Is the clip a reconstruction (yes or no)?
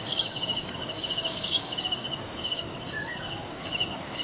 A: yes